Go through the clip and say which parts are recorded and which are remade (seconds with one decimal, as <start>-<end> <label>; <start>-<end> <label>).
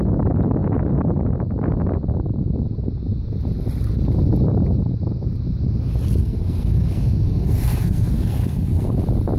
0.0-6.2 recorded; 6.2-9.0 remade; 9.0-9.4 recorded